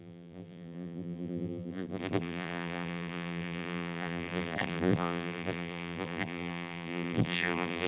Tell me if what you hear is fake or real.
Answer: fake